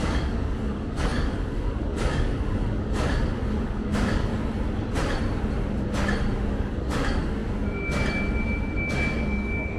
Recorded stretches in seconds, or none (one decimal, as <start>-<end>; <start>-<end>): 4.3-6.5; 7.4-8.9